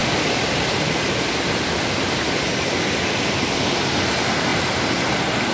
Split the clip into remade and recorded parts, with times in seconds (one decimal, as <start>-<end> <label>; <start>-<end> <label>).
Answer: 0.0-5.5 recorded